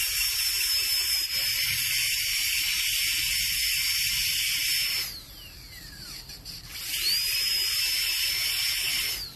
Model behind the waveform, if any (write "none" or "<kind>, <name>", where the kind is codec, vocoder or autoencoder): none